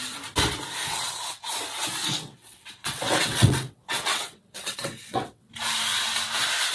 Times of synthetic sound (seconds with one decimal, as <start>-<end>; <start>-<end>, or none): 0.9-1.5; 2.0-5.5